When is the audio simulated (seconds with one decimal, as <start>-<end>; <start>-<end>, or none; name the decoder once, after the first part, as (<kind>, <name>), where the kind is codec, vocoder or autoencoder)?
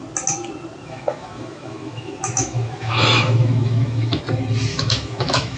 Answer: 0.8-4.2 (autoencoder, DAC-VAE); 4.7-5.6